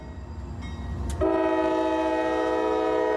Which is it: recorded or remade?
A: recorded